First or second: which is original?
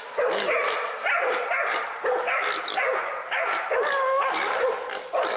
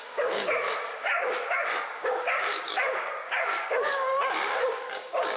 first